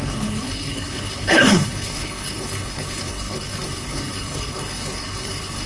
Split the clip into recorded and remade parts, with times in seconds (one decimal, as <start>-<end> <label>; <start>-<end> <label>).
0.0-5.7 remade